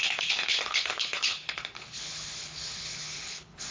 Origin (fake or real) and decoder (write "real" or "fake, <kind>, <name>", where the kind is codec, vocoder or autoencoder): fake, codec, HILCodec